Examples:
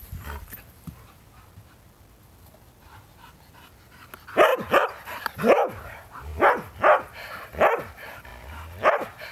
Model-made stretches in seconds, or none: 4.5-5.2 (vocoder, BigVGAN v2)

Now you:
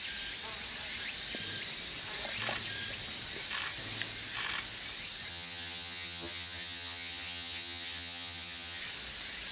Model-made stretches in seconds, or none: 5.3-8.8 (vocoder, HiFi-GAN)

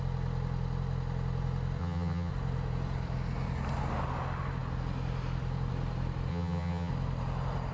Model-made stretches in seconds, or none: 1.8-2.3 (vocoder, HiFi-GAN); 6.3-6.9

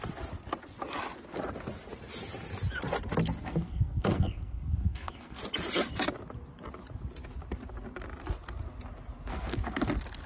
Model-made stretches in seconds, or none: 3.4-5.4 (codec, SNAC); 9.3-9.9

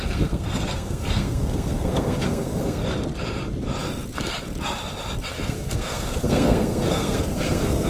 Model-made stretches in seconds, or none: 0.0-2.8 (codec, SNAC); 5.5-7.9